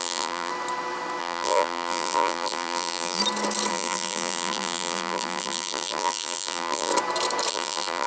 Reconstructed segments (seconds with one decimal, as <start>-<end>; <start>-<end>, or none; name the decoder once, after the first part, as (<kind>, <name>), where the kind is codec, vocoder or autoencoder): 0.0-0.5 (vocoder, BigVGAN v2); 1.2-3.2; 3.7-6.9; 7.5-8.1